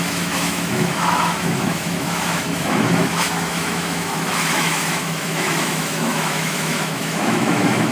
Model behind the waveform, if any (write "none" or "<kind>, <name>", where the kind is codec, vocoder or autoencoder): autoencoder, DAC-VAE